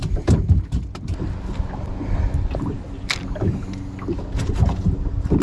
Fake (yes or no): no